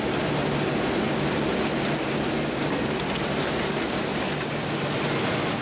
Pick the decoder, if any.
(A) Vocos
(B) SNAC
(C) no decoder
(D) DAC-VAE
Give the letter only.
C